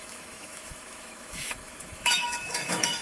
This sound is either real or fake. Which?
fake